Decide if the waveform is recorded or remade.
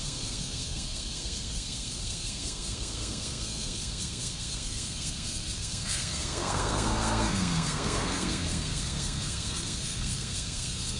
remade